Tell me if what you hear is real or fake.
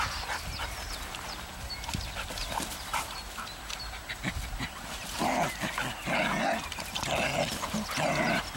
real